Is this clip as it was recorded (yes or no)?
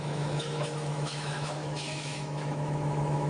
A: no